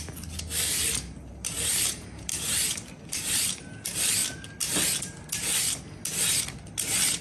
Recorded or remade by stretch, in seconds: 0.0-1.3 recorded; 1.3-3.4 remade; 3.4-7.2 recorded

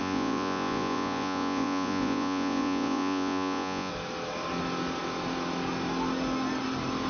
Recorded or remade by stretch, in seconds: 0.0-3.9 remade; 3.9-7.1 recorded

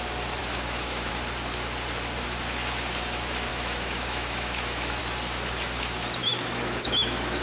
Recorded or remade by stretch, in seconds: 0.0-0.4 recorded; 0.4-1.1 remade; 1.1-3.5 recorded; 3.5-5.0 remade; 5.0-6.2 recorded; 6.2-7.4 remade

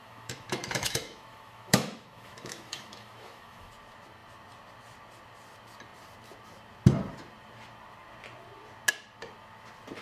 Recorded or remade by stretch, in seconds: 0.0-3.7 remade; 3.7-10.0 recorded

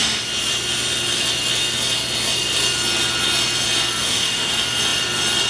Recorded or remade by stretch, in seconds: 0.0-4.0 recorded; 4.0-4.5 remade; 4.5-5.5 recorded